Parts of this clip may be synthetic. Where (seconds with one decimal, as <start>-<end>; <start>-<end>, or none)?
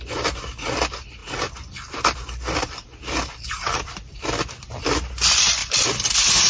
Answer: 1.2-5.1; 5.6-6.1